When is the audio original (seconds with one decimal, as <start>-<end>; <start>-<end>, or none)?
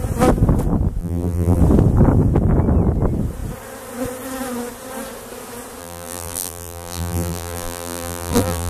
0.0-1.0; 1.6-5.8